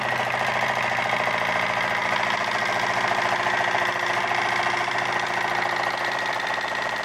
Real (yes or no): yes